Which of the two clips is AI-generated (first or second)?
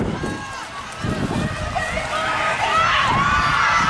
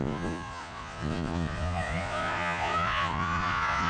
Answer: second